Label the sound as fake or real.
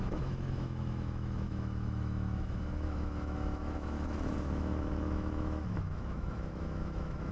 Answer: fake